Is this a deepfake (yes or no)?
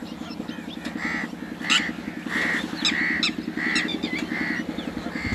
no